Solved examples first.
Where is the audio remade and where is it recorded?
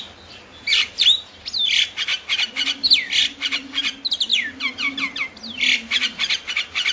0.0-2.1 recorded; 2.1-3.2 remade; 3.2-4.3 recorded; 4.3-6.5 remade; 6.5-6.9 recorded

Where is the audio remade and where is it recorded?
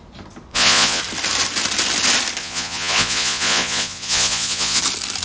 0.0-0.5 recorded; 0.5-1.0 remade; 1.0-2.4 recorded; 2.4-4.8 remade; 4.8-5.2 recorded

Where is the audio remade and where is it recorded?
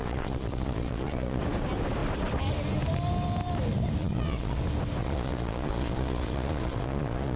0.0-1.4 remade; 1.4-4.0 recorded; 4.0-4.6 remade; 4.6-5.0 recorded; 5.0-7.4 remade